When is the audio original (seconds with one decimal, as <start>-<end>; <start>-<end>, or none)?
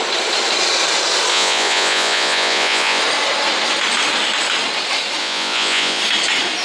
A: 0.0-1.3; 3.0-5.2; 6.0-6.6